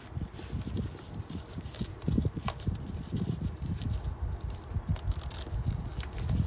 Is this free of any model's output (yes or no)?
yes